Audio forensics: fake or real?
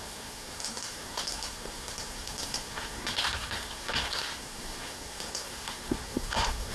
fake